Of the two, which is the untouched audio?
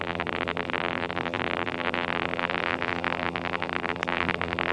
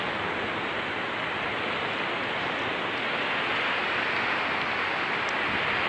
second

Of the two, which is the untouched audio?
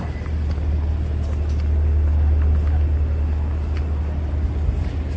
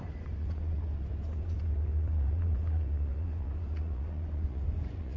first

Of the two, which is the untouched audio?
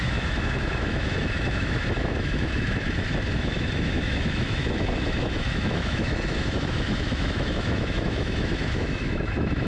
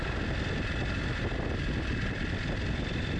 second